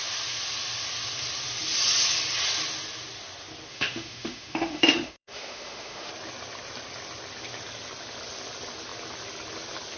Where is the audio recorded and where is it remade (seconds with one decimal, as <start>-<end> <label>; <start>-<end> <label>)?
0.0-3.7 recorded; 3.7-6.1 remade; 6.1-10.0 recorded